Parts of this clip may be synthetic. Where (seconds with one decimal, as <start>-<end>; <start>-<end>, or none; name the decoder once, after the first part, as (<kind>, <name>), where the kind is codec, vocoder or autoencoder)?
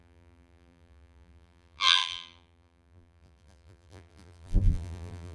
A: 0.0-5.3 (vocoder, BigVGAN v2)